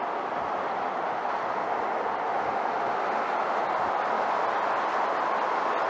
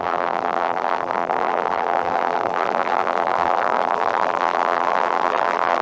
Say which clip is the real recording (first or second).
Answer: first